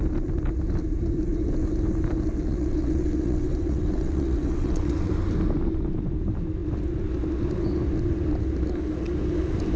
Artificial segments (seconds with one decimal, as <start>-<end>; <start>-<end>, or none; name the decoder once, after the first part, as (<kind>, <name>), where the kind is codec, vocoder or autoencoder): 2.5-5.1 (vocoder, WaveNeXt)